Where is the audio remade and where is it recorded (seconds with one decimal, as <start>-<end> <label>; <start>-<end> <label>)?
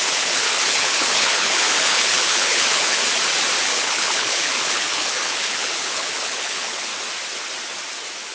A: 0.0-3.0 remade; 3.0-3.6 recorded; 3.6-6.9 remade; 6.9-8.3 recorded